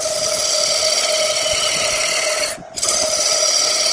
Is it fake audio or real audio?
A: real